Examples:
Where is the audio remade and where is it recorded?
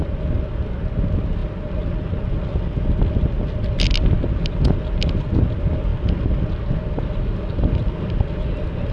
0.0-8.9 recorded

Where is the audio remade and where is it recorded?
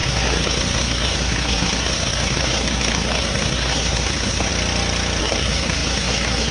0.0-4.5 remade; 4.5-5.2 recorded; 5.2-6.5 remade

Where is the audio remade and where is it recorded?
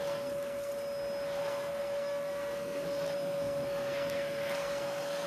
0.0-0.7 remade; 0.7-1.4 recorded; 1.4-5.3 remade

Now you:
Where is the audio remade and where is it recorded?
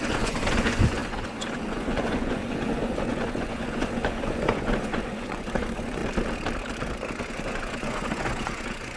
0.0-6.0 remade; 6.0-7.4 recorded; 7.4-9.0 remade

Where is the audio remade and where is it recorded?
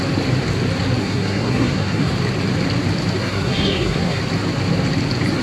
0.0-1.0 recorded; 1.0-2.1 remade; 2.1-3.2 recorded; 3.2-4.2 remade; 4.2-5.4 recorded